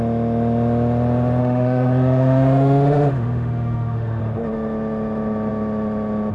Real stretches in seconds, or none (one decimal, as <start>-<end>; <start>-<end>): 0.0-1.4; 4.2-6.3